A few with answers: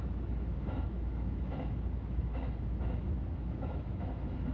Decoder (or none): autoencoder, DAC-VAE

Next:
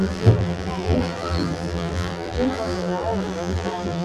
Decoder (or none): vocoder, BigVGAN v2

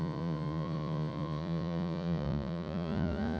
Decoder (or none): vocoder, Vocos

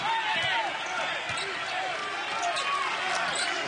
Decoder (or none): none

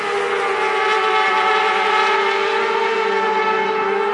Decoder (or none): none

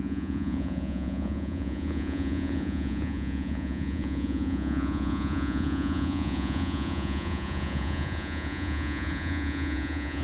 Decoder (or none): vocoder, Vocos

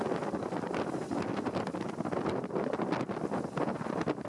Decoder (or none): none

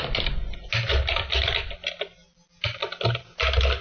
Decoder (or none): none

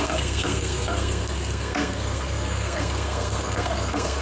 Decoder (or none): codec, SNAC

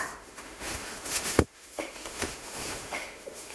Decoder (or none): autoencoder, DAC-VAE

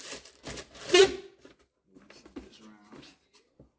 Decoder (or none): none